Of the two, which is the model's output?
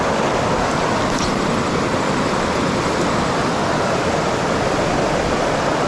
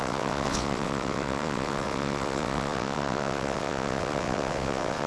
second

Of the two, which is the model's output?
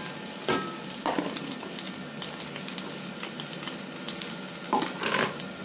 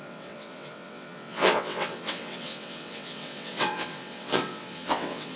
second